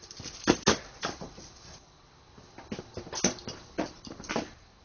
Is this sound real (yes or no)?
yes